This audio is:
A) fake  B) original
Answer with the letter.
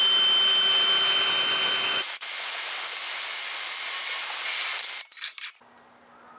B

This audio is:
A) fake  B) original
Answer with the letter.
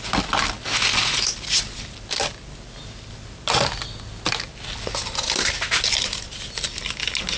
B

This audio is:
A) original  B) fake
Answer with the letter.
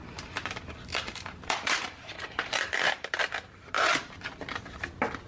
A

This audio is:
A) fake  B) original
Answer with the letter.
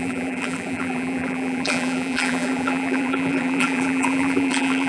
A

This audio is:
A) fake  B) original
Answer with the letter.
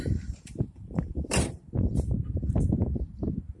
A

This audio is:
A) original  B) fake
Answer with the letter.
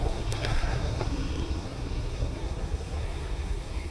B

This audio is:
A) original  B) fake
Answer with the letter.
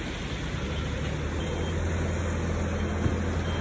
A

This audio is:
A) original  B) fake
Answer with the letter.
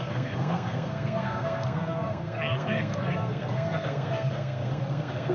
B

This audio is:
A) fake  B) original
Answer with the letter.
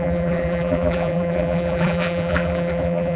A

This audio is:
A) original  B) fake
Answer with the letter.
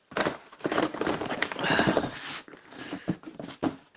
B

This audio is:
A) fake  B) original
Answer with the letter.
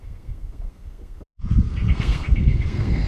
A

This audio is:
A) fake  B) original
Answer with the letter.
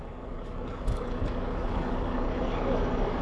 A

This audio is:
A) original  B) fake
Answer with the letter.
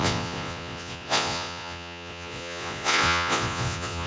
B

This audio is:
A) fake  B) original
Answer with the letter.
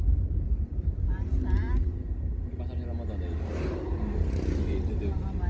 B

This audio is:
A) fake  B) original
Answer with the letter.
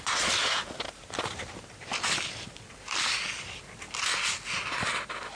B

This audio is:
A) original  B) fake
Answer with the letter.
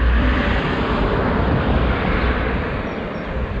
B